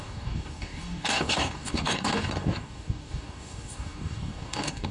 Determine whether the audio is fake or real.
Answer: fake